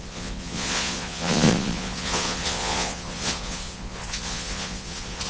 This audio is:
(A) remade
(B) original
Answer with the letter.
A